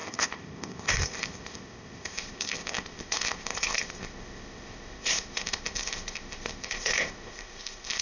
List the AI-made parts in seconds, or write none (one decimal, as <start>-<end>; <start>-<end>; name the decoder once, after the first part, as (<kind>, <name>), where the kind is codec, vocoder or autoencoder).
0.0-8.0 (codec, ZipCodec)